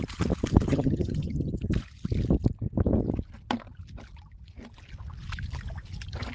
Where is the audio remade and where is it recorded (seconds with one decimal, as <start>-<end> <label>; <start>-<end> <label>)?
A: 0.0-0.7 recorded; 0.7-1.5 remade; 1.5-6.3 recorded